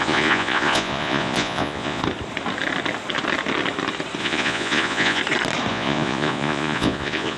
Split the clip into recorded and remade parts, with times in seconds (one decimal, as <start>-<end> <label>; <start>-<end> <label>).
0.0-2.0 remade; 2.0-4.2 recorded; 4.2-5.2 remade; 5.2-5.7 recorded; 5.7-7.4 remade